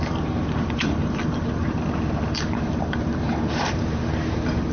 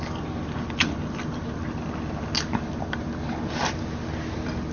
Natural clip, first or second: second